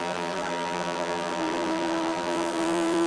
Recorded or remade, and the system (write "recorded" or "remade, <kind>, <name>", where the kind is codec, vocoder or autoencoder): remade, vocoder, BigVGAN v2